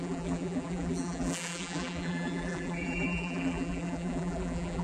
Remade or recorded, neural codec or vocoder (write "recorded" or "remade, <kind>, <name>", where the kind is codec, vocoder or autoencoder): remade, vocoder, BigVGAN v2